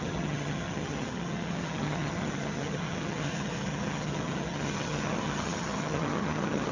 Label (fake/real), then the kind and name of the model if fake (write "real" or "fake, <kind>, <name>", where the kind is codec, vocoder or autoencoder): fake, vocoder, HiFi-GAN